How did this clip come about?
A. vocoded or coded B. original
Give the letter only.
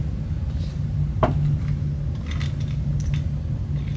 B